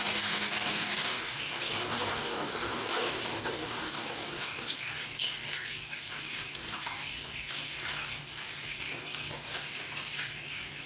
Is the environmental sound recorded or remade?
remade